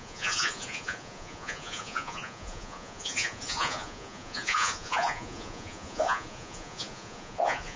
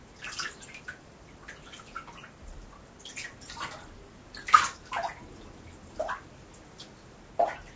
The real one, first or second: second